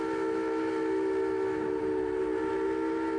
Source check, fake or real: real